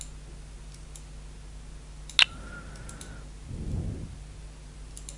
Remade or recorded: recorded